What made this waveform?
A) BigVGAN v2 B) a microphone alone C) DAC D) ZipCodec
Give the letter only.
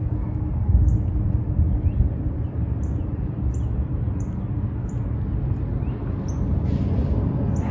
B